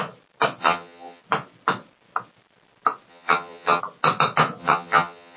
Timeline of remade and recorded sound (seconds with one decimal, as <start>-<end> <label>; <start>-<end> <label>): 0.0-0.6 recorded; 0.6-1.2 remade; 1.2-3.1 recorded; 3.1-3.8 remade; 3.8-4.6 recorded; 4.6-5.4 remade